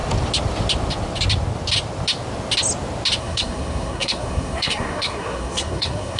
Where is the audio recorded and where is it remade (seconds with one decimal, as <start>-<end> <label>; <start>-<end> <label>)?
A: 0.0-3.2 recorded; 3.2-6.2 remade